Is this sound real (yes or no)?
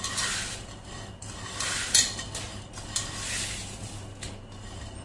yes